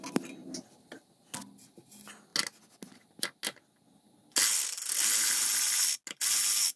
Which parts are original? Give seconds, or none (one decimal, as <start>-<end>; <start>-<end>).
0.0-6.8